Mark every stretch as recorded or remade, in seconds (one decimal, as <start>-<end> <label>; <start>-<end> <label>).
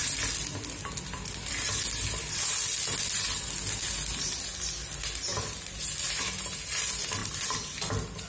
0.0-8.3 recorded